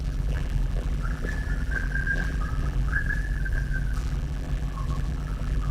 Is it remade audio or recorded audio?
remade